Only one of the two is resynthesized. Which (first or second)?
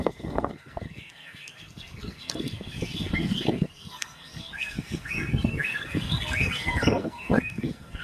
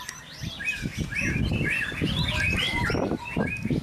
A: first